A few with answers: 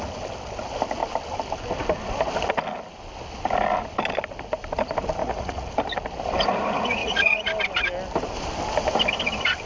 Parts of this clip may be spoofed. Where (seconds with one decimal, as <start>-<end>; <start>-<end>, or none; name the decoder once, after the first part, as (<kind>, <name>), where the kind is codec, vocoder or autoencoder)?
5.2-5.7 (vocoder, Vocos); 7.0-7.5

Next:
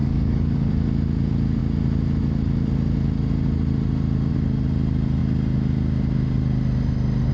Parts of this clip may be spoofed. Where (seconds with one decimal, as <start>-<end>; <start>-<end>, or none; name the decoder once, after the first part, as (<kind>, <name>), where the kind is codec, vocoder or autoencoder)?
0.0-0.7 (codec, DAC)

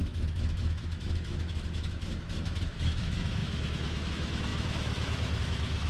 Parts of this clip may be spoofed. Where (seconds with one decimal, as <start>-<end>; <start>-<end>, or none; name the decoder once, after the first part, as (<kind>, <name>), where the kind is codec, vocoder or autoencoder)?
0.0-5.9 (autoencoder, DAC-VAE)

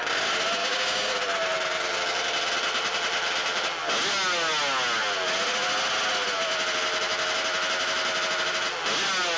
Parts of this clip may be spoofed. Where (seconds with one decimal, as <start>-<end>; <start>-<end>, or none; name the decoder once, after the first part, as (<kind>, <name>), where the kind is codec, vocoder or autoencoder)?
0.6-1.1 (codec, DAC)

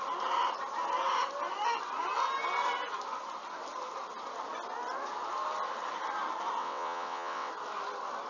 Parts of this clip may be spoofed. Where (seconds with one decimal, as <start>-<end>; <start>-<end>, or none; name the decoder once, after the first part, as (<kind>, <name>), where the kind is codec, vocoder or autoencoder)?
6.6-7.5 (vocoder, WaveNeXt)

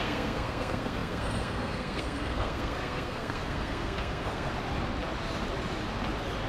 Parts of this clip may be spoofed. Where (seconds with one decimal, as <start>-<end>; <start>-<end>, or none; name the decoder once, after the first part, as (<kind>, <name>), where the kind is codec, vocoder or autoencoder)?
0.0-4.5 (codec, SNAC)